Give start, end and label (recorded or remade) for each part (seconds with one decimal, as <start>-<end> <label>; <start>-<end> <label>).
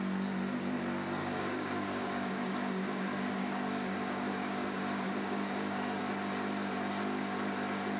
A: 0.0-1.2 recorded; 1.2-6.0 remade; 6.0-8.0 recorded